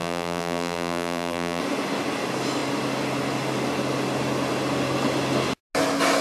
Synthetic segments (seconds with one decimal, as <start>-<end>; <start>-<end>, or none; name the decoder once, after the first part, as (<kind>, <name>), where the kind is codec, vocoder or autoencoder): 0.0-1.6 (vocoder, BigVGAN v2)